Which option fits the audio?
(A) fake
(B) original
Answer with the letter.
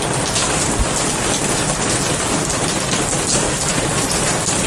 B